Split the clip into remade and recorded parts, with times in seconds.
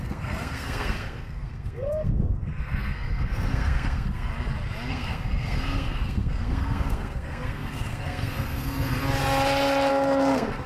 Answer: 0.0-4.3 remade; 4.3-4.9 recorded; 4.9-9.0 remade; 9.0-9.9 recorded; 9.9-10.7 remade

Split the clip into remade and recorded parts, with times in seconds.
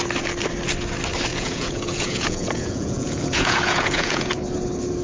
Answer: 0.0-1.3 recorded; 1.3-4.3 remade; 4.3-5.0 recorded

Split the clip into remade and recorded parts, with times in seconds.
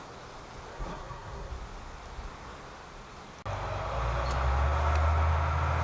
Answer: 0.0-0.7 recorded; 0.7-1.5 remade; 1.5-5.8 recorded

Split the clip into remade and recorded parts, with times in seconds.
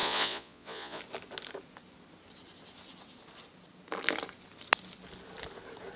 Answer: 0.0-1.0 remade; 1.0-6.0 recorded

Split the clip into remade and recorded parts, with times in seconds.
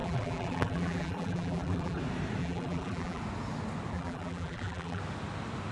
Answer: 0.0-2.0 remade; 2.0-2.4 recorded; 2.4-3.2 remade; 3.2-3.9 recorded; 3.9-5.0 remade; 5.0-5.7 recorded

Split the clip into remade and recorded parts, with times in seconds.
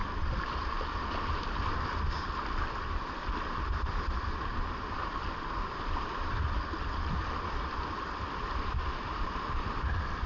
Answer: 0.0-10.3 recorded